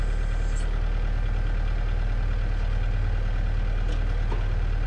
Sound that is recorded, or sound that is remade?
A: recorded